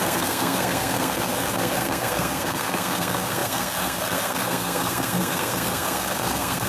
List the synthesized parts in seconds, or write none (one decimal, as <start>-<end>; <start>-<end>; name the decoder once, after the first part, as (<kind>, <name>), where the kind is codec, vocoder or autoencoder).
0.0-6.7 (codec, SNAC)